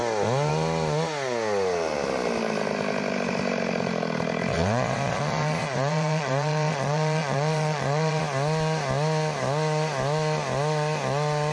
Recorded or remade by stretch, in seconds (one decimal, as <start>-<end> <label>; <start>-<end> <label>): 0.0-4.5 recorded; 4.5-8.2 remade; 8.2-11.5 recorded